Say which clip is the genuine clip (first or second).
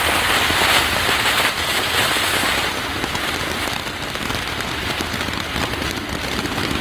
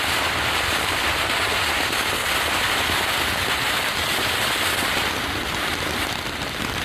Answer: first